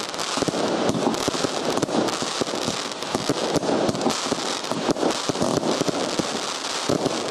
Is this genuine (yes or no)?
yes